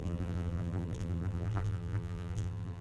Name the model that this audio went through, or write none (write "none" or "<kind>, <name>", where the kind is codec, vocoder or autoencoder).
vocoder, BigVGAN v2